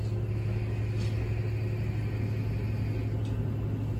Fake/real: real